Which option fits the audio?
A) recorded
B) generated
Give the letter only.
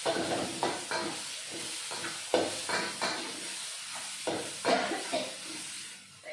A